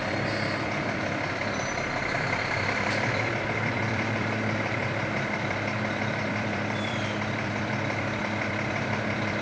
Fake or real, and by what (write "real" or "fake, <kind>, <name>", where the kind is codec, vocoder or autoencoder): fake, vocoder, BigVGAN v2